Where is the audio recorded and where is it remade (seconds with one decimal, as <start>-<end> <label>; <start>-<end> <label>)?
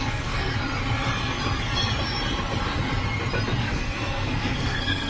0.0-0.5 remade; 0.5-3.6 recorded; 3.6-5.1 remade